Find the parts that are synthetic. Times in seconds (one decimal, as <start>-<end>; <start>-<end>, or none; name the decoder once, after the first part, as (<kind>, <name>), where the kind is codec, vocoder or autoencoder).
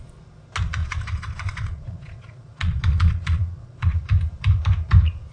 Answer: 0.8-4.0 (vocoder, Vocos)